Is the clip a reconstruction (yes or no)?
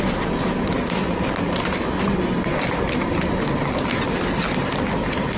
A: no